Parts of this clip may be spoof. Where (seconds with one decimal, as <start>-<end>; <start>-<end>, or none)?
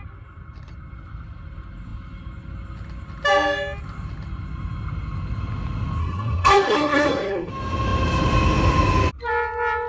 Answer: 6.0-7.5